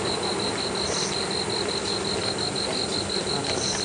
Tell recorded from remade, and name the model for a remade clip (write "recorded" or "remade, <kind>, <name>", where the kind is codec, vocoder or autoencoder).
recorded